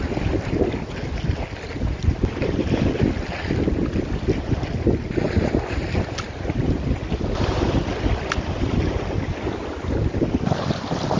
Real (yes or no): yes